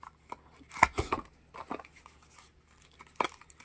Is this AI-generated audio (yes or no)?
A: no